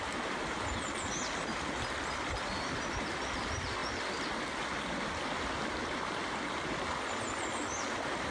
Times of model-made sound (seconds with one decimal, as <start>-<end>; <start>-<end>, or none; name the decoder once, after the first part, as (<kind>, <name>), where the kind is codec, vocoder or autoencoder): none